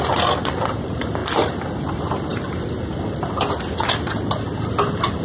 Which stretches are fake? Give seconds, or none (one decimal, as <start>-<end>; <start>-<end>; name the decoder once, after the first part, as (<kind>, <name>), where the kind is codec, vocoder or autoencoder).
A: none